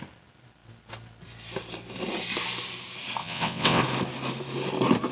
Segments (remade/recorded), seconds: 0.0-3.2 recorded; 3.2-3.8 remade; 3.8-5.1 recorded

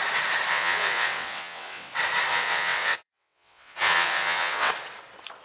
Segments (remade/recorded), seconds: 0.0-0.5 recorded; 0.5-1.9 remade; 1.9-2.3 recorded; 2.3-4.7 remade; 4.7-5.4 recorded

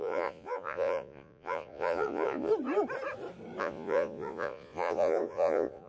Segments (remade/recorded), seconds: 0.0-2.5 remade; 2.5-3.6 recorded; 3.6-5.9 remade

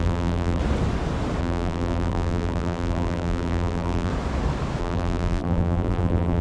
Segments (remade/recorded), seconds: 0.0-0.6 remade; 0.6-1.4 recorded; 1.4-4.1 remade; 4.1-4.8 recorded; 4.8-6.4 remade

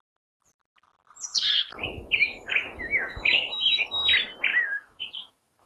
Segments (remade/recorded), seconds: 0.0-1.7 recorded; 1.7-3.9 remade; 3.9-4.5 recorded; 4.5-5.7 remade